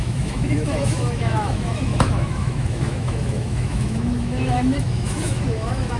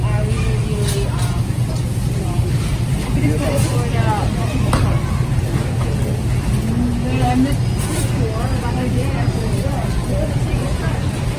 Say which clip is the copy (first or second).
first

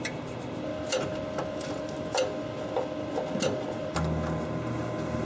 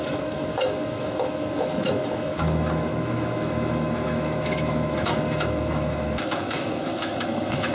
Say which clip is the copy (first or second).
second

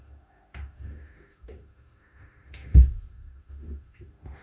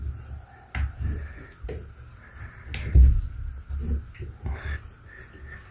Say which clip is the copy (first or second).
first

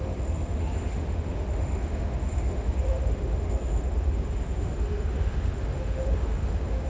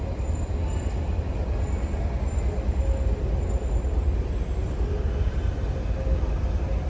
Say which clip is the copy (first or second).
first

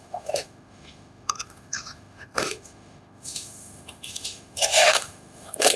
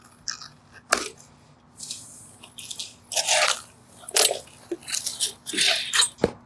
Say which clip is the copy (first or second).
first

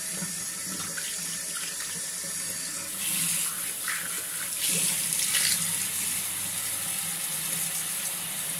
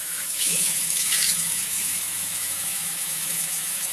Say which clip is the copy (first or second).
second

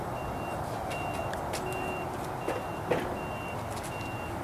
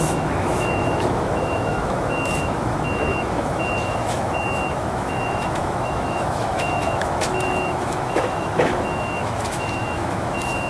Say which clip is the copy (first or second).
second